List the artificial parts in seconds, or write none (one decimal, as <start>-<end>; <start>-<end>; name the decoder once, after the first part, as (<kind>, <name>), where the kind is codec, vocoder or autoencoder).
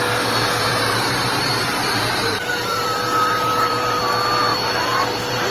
0.7-4.0 (vocoder, BigVGAN v2); 4.5-5.5